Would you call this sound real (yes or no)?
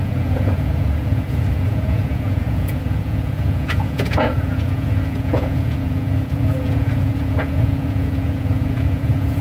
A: no